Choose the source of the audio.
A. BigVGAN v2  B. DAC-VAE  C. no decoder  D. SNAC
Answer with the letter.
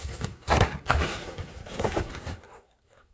D